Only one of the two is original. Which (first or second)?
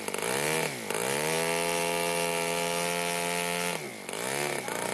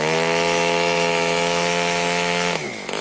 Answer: first